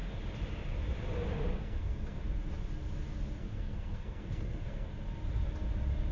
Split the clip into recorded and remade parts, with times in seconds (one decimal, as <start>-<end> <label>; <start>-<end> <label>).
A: 0.0-1.5 recorded; 1.5-2.2 remade; 2.2-3.4 recorded; 3.4-4.9 remade; 4.9-6.1 recorded